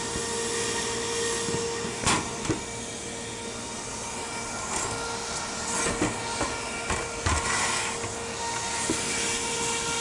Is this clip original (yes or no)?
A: yes